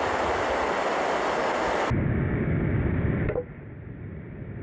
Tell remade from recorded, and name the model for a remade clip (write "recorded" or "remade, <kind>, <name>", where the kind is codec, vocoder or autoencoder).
recorded